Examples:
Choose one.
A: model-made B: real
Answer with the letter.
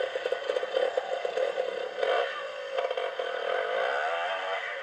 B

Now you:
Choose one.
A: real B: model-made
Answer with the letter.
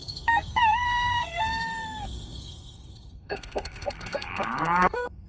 B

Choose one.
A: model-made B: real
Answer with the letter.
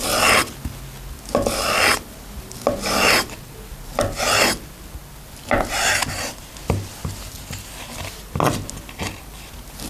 B